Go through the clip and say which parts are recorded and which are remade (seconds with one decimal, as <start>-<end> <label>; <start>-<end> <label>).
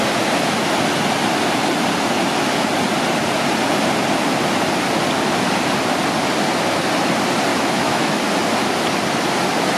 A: 0.0-7.5 recorded; 7.5-8.2 remade; 8.2-9.8 recorded